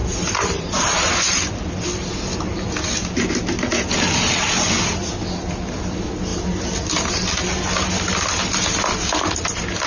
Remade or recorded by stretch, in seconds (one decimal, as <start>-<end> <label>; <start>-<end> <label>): 0.0-1.5 remade; 1.5-9.9 recorded